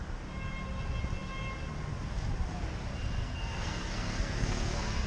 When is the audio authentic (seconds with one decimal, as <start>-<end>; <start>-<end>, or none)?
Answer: 0.0-3.2